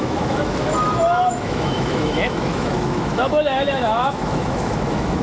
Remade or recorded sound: remade